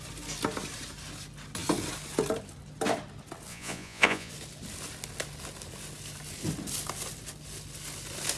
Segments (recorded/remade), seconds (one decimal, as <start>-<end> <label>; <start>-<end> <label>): 0.0-3.5 recorded; 3.5-4.3 remade; 4.3-8.4 recorded